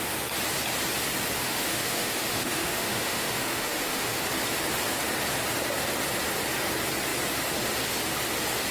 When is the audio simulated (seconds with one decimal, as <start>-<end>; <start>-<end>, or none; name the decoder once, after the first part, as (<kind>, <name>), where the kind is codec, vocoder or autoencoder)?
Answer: 1.4-4.2 (autoencoder, DAC-VAE)